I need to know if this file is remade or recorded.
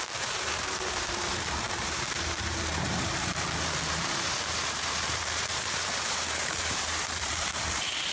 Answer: remade